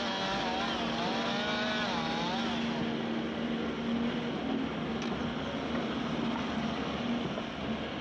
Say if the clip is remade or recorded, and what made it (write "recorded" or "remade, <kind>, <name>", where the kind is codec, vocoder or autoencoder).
recorded